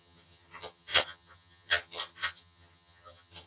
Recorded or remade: remade